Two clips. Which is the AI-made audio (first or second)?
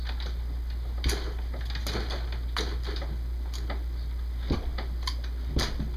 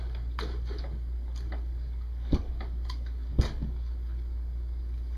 second